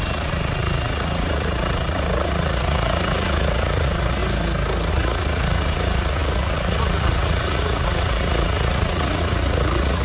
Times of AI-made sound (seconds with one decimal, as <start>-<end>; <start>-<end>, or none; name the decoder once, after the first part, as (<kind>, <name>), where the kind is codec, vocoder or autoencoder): 0.0-4.2 (vocoder, Vocos); 4.9-10.0

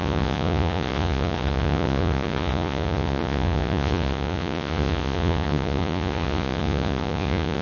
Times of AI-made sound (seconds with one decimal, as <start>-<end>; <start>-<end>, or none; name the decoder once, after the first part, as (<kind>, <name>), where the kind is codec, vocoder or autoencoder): 0.0-7.6 (vocoder, Vocos)

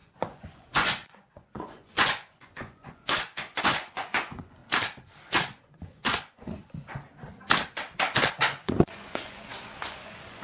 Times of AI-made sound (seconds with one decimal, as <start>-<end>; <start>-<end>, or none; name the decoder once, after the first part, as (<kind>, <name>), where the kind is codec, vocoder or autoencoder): 0.0-4.6 (vocoder, Vocos); 5.4-6.6; 8.3-10.4

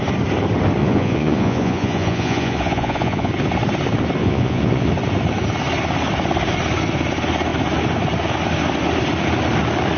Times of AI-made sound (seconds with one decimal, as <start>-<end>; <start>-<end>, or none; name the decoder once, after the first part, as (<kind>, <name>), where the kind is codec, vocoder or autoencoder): 0.8-3.3 (vocoder, Vocos); 4.2-4.9

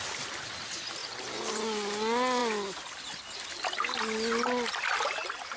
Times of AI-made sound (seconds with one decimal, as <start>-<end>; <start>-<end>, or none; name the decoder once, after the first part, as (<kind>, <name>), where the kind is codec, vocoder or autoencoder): none

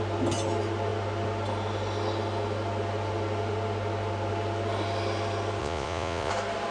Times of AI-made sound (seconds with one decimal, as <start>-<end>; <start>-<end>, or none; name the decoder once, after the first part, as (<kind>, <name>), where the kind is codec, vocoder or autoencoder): 5.6-6.3 (vocoder, Vocos)